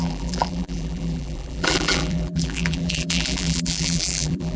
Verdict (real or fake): fake